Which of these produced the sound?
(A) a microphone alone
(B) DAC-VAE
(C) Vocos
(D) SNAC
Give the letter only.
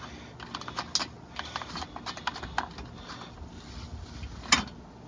A